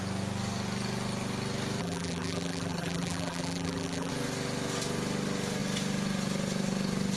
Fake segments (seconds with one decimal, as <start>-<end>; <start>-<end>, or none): 1.8-4.1